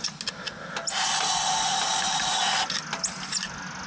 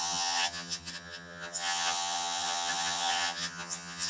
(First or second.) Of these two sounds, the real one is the first